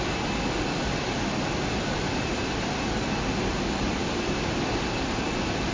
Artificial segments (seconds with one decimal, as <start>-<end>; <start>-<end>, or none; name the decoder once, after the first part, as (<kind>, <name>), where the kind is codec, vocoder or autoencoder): none